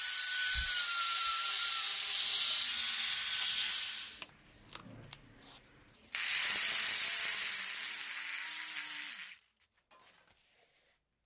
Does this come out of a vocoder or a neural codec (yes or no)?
no